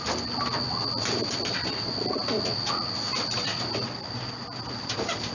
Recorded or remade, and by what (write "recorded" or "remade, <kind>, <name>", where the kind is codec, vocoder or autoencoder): recorded